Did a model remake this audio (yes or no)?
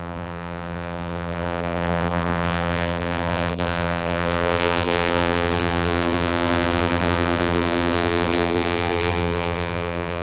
yes